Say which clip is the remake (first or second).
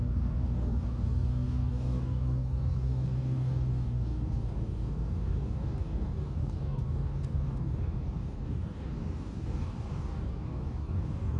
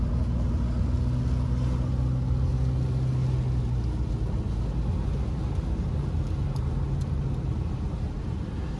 first